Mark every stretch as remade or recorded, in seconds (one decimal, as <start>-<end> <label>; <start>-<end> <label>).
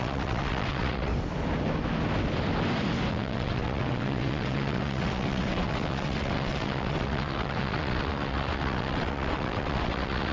0.0-1.1 remade; 1.1-3.1 recorded; 3.1-10.3 remade